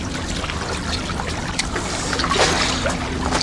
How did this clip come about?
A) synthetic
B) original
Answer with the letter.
B